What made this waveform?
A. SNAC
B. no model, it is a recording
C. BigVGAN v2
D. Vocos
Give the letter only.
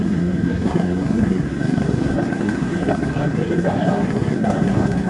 A